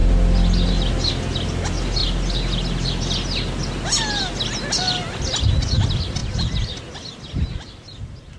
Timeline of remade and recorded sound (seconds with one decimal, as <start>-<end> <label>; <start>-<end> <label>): 0.0-6.2 recorded; 6.2-6.8 remade; 6.8-8.4 recorded